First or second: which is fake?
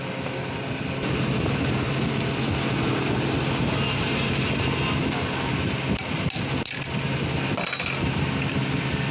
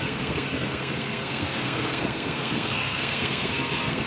second